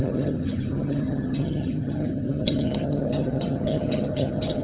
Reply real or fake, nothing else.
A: fake